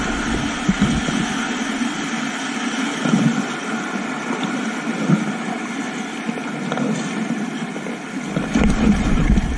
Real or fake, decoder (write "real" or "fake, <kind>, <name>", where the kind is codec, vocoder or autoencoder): real